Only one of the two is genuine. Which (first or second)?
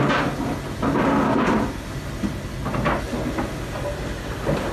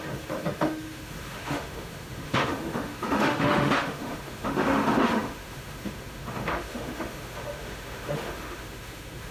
first